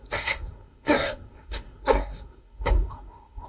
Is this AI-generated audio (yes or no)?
yes